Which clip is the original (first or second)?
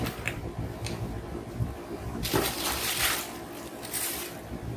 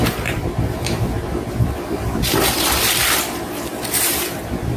first